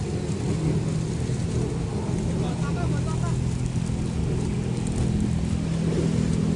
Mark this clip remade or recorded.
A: recorded